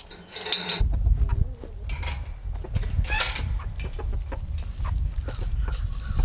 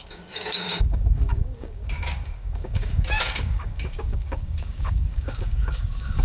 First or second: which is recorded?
first